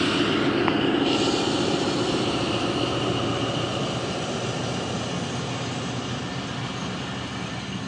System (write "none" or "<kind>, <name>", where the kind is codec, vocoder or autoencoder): none